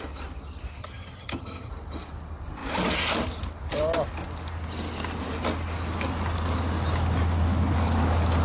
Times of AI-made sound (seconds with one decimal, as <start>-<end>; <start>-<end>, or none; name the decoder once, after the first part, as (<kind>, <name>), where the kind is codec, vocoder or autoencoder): 0.8-1.7 (vocoder, HiFi-GAN)